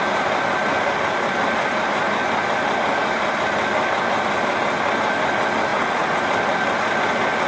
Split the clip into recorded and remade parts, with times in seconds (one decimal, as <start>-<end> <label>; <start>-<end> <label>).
0.0-5.7 recorded; 5.7-6.2 remade; 6.2-7.5 recorded